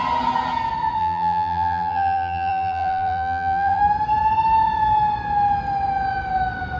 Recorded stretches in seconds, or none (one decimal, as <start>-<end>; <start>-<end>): 0.0-1.0; 3.8-6.8